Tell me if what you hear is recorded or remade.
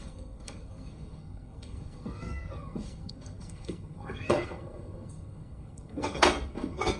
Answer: remade